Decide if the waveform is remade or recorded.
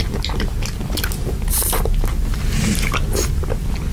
recorded